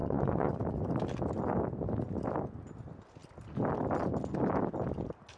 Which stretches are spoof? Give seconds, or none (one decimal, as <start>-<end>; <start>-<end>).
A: 0.0-0.5